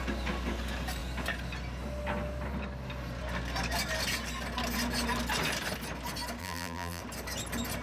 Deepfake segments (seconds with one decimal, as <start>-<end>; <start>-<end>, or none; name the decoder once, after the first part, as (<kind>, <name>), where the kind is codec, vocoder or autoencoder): 6.4-7.0 (vocoder, BigVGAN v2)